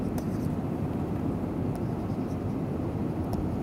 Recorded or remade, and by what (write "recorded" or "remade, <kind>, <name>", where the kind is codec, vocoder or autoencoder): recorded